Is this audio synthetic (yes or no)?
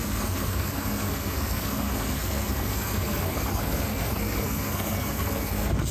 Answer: yes